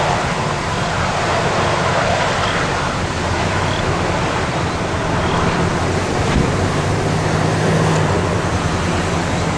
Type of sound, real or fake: real